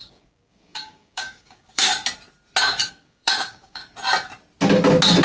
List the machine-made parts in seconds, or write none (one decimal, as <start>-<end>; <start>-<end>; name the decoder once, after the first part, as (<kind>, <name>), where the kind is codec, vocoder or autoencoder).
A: 0.0-1.9 (codec, DAC); 2.9-3.8